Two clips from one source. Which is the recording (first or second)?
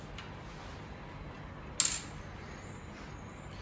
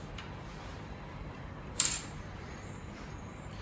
first